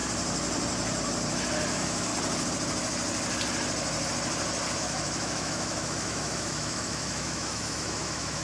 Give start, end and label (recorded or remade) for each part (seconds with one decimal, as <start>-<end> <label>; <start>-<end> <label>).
0.0-1.7 recorded; 1.7-2.1 remade; 2.1-4.8 recorded; 4.8-8.4 remade